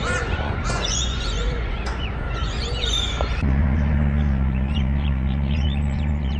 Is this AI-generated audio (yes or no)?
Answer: yes